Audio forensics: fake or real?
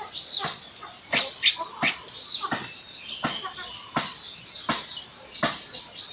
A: real